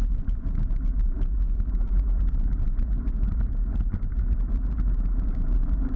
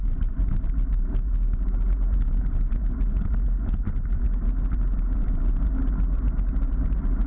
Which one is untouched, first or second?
second